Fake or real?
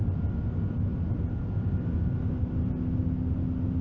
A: real